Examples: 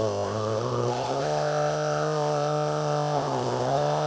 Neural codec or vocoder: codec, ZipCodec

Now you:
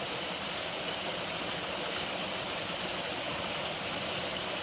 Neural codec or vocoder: none